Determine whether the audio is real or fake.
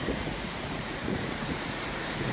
fake